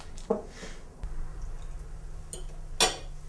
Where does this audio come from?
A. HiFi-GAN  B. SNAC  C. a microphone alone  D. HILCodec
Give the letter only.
C